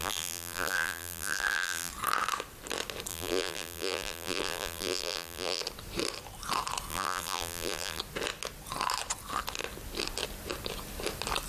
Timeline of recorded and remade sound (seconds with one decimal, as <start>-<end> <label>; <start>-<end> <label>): 0.0-1.9 remade; 1.9-3.1 recorded; 3.1-5.6 remade; 5.6-6.9 recorded; 6.9-8.0 remade; 8.0-11.5 recorded